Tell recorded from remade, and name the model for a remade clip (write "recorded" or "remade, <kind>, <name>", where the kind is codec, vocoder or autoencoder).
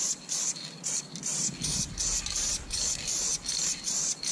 recorded